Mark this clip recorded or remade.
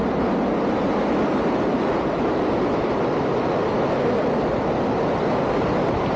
recorded